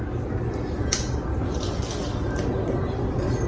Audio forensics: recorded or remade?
recorded